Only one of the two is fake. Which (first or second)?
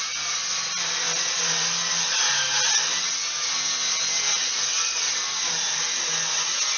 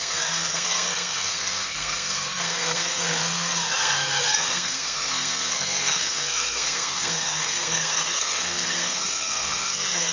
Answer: second